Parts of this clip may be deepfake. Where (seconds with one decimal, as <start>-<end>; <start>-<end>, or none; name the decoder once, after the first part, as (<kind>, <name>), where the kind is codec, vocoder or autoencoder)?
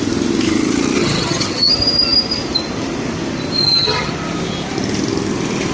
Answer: 1.0-1.7 (vocoder, HiFi-GAN); 3.6-4.1